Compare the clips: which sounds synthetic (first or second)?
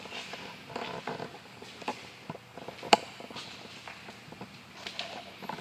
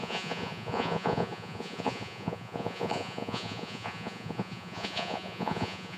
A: second